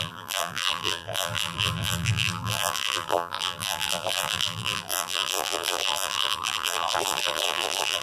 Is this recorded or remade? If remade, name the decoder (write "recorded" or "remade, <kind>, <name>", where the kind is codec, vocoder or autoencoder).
remade, vocoder, BigVGAN v2